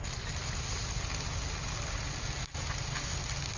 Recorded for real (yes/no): yes